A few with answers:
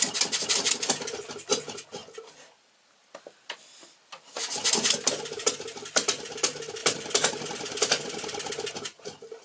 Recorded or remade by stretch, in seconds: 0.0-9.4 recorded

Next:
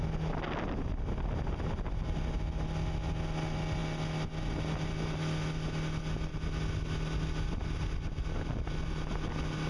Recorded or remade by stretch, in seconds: 0.0-9.7 recorded